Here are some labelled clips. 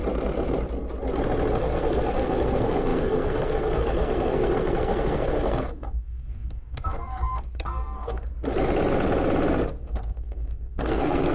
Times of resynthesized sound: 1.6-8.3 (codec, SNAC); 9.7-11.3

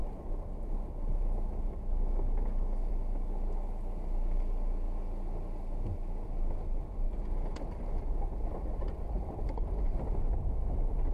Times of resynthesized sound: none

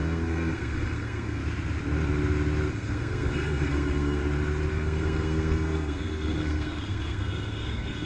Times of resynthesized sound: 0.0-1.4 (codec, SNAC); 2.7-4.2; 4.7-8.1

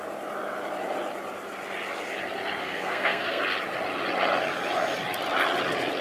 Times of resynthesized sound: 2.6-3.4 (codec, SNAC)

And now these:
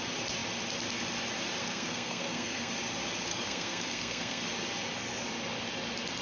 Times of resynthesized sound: 1.6-2.7 (codec, SNAC); 3.3-4.4

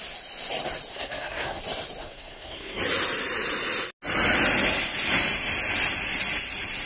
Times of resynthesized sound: 0.9-1.6 (codec, SNAC); 2.0-2.8

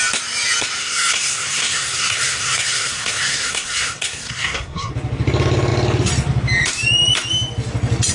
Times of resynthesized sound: 0.8-4.9 (codec, SNAC)